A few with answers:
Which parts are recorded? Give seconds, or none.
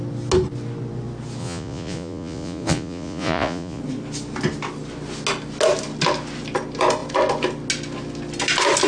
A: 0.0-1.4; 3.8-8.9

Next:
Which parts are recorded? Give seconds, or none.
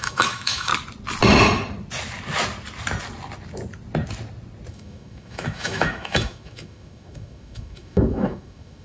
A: 0.7-4.7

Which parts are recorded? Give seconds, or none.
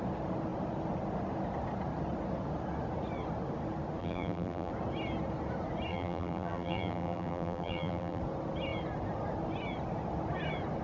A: 0.0-4.0; 4.7-5.9; 8.2-10.8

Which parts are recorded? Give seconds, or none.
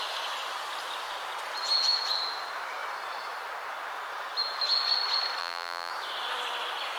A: 0.0-5.4; 5.9-7.0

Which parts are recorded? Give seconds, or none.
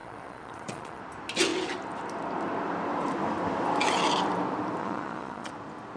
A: 1.0-4.8; 5.5-6.0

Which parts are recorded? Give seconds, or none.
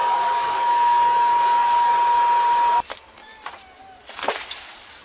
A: 1.9-5.0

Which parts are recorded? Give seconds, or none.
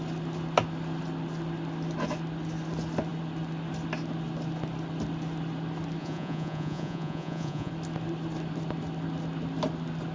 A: 0.0-6.0; 7.7-10.1